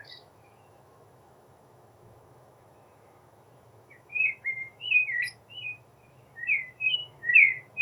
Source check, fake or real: fake